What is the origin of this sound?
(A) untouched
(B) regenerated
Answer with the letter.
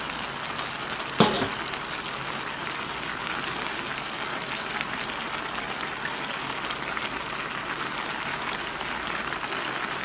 A